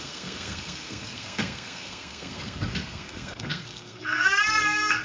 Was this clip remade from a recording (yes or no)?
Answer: yes